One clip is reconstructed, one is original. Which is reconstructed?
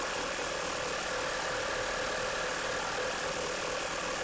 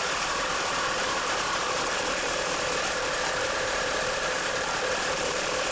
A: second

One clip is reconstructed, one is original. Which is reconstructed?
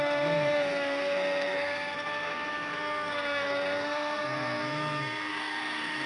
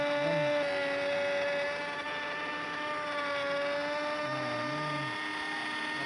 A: first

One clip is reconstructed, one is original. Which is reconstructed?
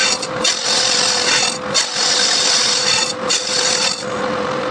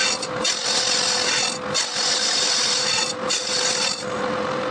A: first